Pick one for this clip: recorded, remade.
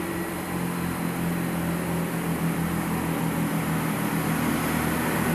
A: recorded